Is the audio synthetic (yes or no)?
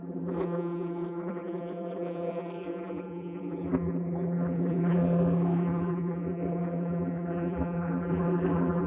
yes